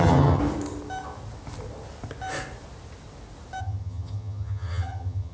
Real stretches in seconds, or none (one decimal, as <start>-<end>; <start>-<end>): 0.4-3.6